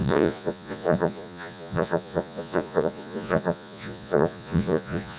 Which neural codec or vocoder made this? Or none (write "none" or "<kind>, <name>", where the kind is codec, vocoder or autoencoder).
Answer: vocoder, Vocos